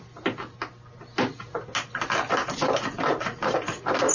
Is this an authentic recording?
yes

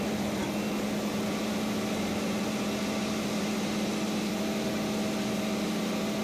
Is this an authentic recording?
yes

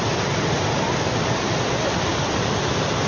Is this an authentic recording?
yes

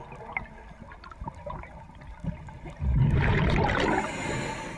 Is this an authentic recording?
yes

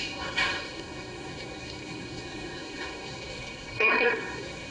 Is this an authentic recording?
no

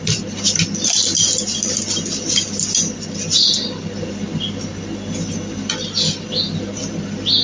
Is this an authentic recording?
yes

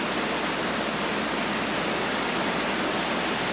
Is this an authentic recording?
yes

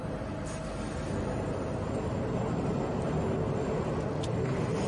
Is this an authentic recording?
yes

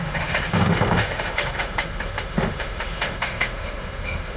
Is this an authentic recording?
no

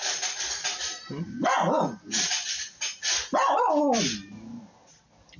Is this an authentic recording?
yes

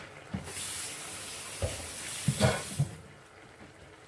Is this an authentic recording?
yes